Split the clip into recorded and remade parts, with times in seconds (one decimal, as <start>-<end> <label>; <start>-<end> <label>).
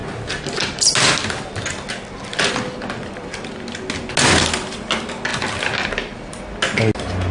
0.0-7.3 recorded